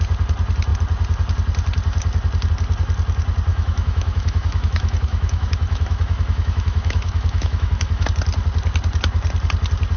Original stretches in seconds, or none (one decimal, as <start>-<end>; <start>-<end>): 0.0-3.5; 8.1-10.0